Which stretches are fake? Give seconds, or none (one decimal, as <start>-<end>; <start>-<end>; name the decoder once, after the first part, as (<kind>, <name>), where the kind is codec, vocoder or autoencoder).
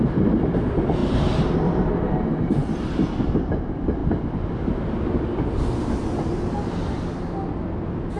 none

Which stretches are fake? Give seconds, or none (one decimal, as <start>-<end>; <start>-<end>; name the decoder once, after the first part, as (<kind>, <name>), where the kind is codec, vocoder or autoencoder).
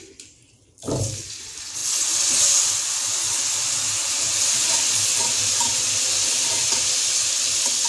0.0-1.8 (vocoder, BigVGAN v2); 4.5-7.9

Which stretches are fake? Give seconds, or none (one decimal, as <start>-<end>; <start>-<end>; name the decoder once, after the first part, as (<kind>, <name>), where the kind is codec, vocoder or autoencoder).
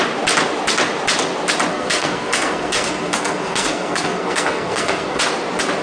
1.7-5.2 (codec, SNAC)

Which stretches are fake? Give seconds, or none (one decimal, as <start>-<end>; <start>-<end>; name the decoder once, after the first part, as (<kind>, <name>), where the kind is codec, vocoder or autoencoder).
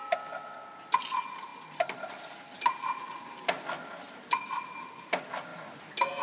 none